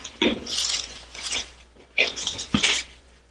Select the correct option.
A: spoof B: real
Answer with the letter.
A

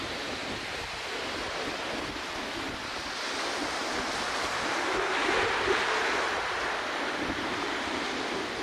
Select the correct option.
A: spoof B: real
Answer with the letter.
B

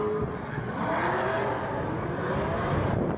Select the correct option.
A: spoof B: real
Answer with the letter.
B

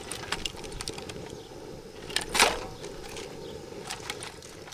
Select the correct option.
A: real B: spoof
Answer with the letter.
A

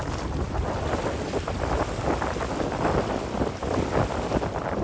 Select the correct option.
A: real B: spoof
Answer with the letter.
A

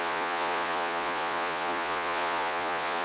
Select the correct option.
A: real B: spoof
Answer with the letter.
B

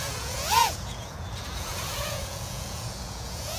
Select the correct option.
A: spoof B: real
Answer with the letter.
A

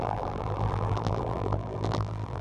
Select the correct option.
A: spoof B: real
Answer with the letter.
A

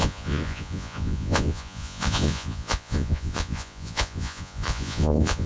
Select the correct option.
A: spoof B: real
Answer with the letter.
A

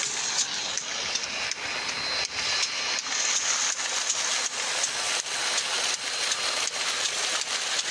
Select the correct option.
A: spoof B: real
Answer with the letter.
B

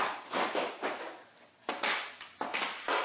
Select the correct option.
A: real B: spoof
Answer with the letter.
A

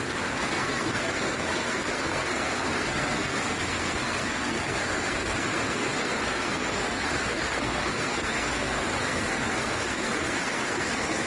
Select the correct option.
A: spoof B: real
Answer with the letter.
A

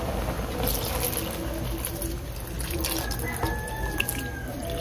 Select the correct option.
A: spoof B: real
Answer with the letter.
B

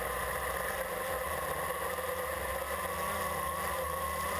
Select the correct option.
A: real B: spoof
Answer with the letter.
A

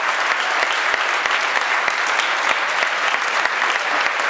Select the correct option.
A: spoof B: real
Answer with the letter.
B